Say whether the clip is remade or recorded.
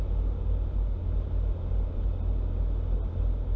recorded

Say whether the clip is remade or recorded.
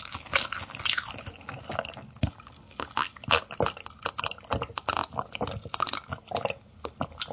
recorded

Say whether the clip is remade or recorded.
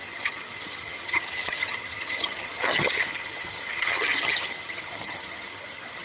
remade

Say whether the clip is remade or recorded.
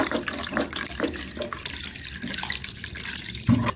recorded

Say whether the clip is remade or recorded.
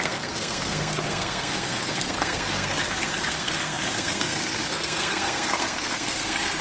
remade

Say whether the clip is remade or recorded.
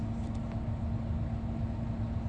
recorded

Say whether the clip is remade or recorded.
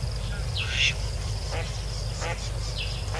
recorded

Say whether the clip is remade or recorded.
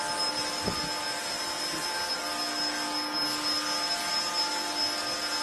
recorded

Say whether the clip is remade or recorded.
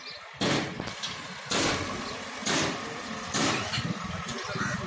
recorded